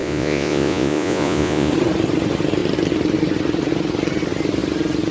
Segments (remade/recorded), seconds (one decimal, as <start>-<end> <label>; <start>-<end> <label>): 0.0-1.7 remade; 1.7-5.1 recorded